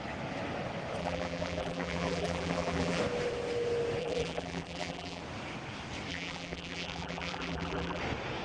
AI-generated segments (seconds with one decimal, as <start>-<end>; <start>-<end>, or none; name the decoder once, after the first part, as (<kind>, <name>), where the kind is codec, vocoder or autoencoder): 1.0-3.0 (vocoder, BigVGAN v2); 4.0-5.2; 6.1-8.0